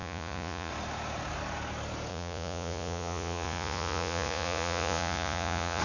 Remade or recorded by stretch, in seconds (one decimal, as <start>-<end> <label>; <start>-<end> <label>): 0.0-0.7 remade; 0.7-2.1 recorded; 2.1-5.8 remade